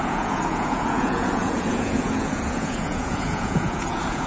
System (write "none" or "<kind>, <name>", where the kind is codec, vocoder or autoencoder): vocoder, Vocos